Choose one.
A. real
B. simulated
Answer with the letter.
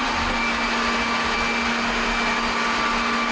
A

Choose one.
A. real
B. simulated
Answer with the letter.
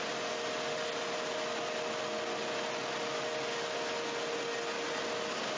A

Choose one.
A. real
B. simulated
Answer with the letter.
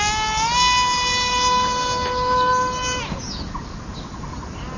A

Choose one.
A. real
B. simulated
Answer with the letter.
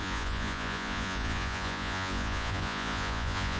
B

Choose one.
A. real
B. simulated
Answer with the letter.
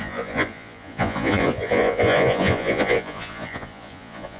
B